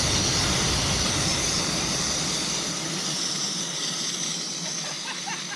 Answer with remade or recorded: recorded